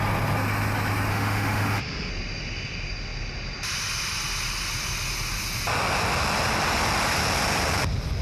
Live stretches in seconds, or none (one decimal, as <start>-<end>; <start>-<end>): 0.0-1.1; 2.1-8.2